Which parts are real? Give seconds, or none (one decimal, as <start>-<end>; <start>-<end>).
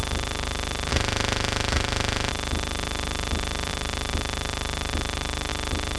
0.0-0.9; 2.3-6.0